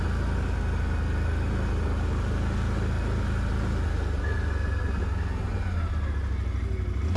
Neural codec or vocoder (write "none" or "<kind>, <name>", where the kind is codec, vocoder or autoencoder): none